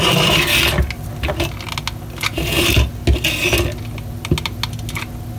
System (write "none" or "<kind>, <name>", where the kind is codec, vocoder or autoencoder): none